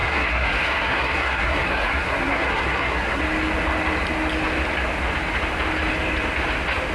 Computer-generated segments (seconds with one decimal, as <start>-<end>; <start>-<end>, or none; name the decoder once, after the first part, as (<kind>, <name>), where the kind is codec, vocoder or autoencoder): 0.0-3.2 (codec, SNAC)